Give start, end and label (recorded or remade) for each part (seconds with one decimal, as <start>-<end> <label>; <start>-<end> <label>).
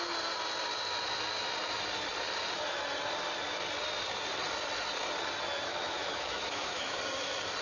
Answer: 0.0-5.7 recorded; 5.7-7.0 remade; 7.0-7.6 recorded